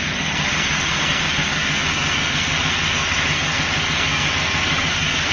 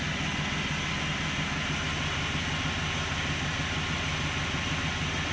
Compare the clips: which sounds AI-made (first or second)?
first